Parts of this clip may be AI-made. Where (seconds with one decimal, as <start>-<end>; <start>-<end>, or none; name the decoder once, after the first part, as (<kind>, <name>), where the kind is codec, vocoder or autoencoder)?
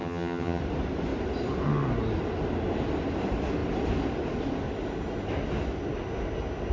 0.0-0.6 (vocoder, HiFi-GAN)